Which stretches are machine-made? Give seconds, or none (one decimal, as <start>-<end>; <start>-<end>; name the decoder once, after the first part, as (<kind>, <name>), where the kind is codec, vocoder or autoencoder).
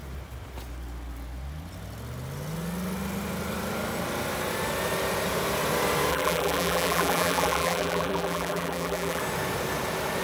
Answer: 6.1-9.2 (vocoder, BigVGAN v2)